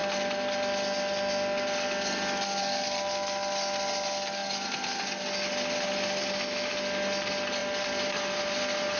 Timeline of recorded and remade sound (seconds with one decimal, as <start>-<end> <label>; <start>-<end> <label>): 0.0-7.6 recorded; 7.6-8.6 remade; 8.6-9.0 recorded